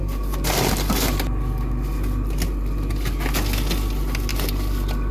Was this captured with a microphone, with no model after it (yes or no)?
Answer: yes